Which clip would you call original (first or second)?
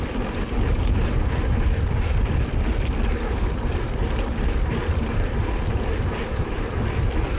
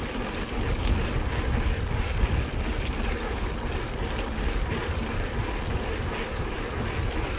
second